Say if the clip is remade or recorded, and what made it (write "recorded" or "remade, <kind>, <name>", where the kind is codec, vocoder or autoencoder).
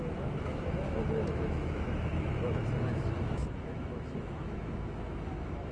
remade, autoencoder, DAC-VAE